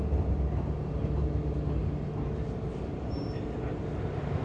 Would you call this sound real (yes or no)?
yes